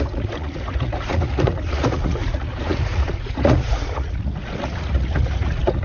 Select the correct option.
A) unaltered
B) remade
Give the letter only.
B